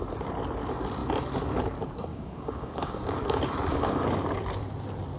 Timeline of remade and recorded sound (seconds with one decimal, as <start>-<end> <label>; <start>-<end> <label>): 0.0-2.1 recorded; 2.1-4.1 remade; 4.1-5.2 recorded